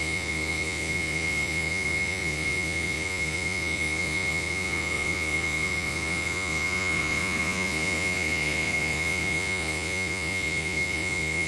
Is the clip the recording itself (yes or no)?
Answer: no